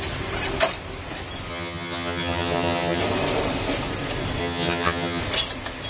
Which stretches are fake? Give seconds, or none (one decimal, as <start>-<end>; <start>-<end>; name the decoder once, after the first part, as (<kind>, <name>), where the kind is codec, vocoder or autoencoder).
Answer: 1.5-3.0 (vocoder, HiFi-GAN); 4.4-5.2